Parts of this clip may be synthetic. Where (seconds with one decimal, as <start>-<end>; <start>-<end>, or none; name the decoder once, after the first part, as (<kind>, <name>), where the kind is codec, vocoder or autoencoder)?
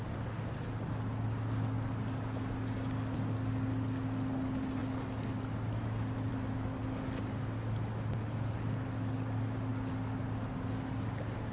none